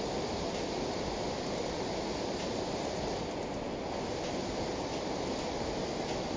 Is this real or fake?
real